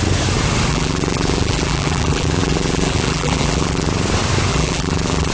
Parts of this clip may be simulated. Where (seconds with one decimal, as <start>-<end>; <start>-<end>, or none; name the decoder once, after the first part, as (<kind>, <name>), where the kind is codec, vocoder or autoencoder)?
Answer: 0.7-3.9 (vocoder, BigVGAN v2); 4.5-5.3